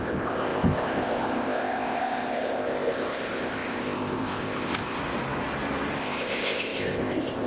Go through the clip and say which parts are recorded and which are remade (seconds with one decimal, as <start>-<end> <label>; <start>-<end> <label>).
0.0-5.0 remade; 5.0-6.0 recorded; 6.0-7.5 remade